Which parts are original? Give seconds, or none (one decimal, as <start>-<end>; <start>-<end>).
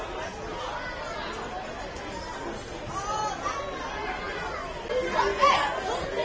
0.0-6.2